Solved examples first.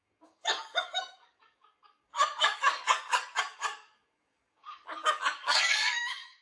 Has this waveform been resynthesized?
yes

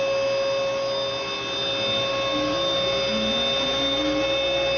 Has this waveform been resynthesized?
no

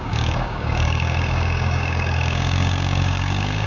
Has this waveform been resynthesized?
yes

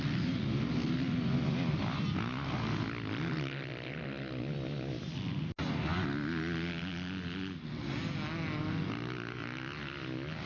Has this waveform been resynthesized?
no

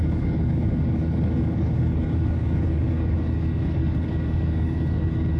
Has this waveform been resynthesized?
yes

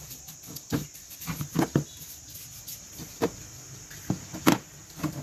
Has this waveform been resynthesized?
no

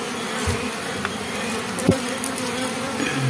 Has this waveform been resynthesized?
no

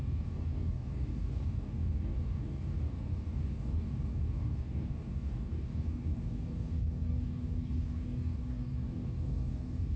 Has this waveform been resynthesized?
yes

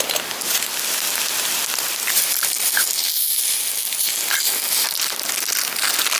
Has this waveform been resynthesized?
no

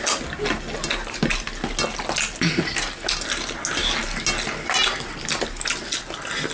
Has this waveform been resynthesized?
no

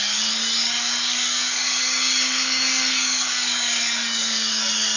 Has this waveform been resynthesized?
yes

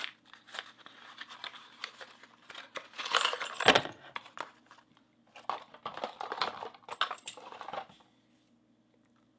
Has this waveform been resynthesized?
no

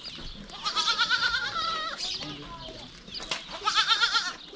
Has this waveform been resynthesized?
no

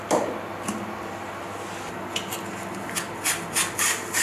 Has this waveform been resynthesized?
no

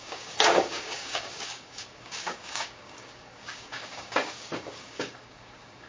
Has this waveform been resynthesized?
yes